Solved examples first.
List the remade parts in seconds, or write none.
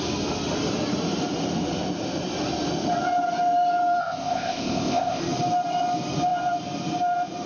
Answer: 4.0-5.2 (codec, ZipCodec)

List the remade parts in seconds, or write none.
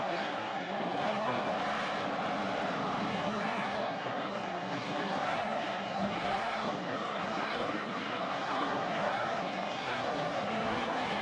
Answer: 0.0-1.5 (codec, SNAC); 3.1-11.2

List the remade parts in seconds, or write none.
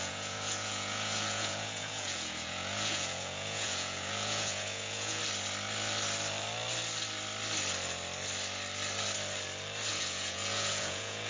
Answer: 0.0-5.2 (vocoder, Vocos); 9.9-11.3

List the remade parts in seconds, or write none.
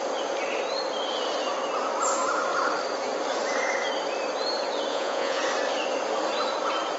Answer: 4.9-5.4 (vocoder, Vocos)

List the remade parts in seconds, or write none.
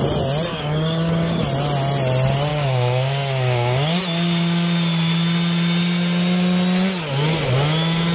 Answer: 0.5-1.4 (codec, DAC); 2.5-4.0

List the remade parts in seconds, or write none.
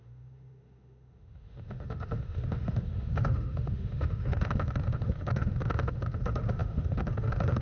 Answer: 0.0-7.6 (autoencoder, DAC-VAE)